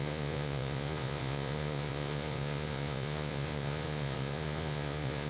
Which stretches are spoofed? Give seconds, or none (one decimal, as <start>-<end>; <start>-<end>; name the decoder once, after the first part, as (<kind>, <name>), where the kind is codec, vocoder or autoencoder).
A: 0.0-5.3 (vocoder, Vocos)